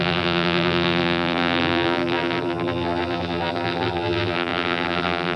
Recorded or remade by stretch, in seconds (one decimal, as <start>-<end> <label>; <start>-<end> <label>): 0.0-5.4 remade